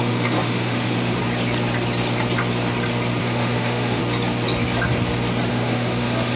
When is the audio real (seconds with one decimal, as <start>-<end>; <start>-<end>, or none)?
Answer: 1.2-3.2; 4.0-5.5